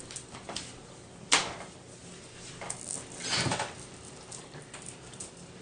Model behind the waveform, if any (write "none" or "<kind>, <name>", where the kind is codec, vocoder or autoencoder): none